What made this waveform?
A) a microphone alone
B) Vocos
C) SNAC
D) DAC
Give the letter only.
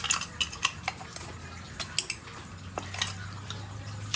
A